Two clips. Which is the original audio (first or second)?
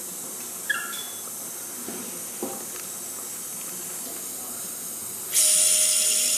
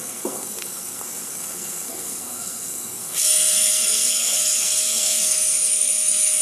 first